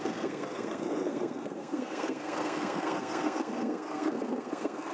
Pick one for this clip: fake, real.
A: fake